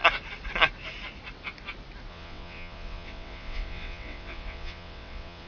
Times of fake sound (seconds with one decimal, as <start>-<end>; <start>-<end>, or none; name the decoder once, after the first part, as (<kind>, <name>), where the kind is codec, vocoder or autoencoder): 2.1-5.5 (vocoder, WaveNeXt)